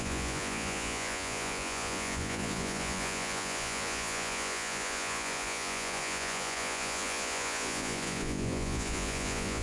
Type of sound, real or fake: fake